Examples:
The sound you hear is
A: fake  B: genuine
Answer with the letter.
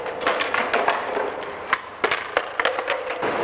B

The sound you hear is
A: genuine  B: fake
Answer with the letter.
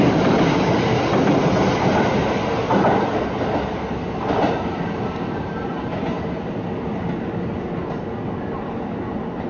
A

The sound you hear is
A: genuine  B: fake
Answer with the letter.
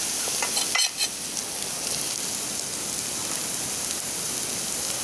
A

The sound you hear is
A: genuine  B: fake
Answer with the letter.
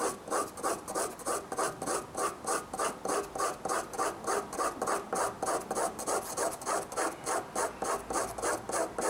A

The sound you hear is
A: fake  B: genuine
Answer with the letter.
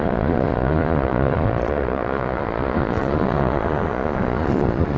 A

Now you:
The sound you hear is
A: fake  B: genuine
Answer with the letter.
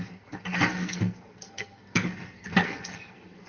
A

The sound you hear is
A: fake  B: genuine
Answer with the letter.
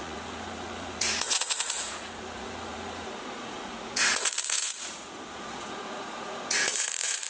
A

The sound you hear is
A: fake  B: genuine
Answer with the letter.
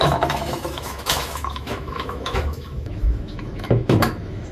A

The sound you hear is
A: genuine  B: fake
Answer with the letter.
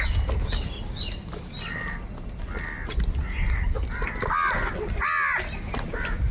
A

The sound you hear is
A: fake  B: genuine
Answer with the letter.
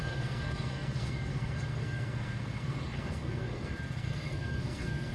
A